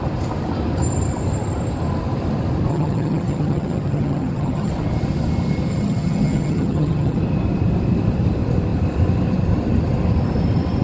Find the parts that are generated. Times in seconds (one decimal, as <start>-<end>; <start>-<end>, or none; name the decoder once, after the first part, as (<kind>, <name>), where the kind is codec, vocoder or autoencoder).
2.7-4.7 (vocoder, HiFi-GAN); 5.7-7.2